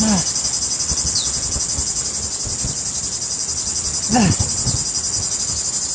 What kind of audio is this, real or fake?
real